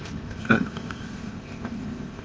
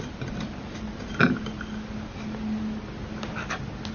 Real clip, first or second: second